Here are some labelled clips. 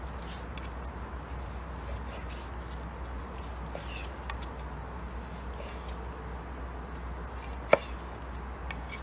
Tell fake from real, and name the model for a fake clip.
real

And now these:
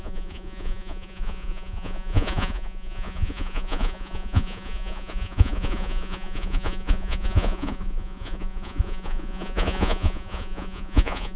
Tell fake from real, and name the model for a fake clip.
fake, vocoder, Vocos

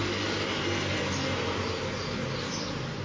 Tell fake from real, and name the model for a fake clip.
real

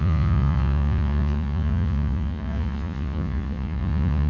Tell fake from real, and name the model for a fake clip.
fake, vocoder, Vocos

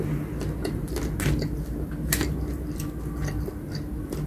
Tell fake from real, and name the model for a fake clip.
real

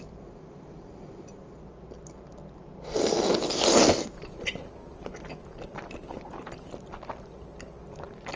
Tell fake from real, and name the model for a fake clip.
real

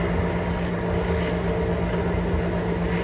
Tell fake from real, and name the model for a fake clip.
real